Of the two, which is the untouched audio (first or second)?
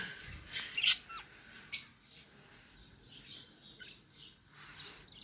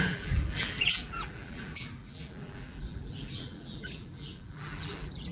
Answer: first